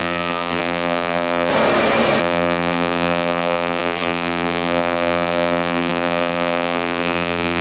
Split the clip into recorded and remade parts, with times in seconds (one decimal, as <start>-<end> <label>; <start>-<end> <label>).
0.0-1.5 remade; 1.5-2.2 recorded; 2.2-7.6 remade